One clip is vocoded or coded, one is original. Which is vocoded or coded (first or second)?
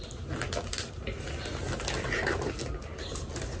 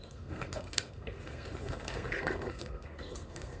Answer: second